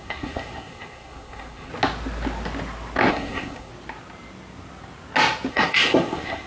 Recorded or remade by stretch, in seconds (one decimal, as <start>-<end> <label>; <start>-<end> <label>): 0.0-1.7 remade; 1.7-3.1 recorded; 3.1-3.7 remade; 3.7-5.5 recorded; 5.5-6.5 remade